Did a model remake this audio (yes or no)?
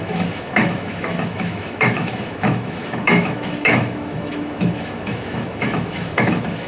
yes